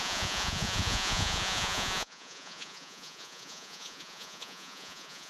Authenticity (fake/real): fake